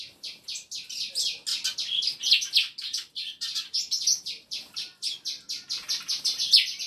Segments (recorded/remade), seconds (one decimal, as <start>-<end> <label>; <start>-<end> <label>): 0.0-6.9 recorded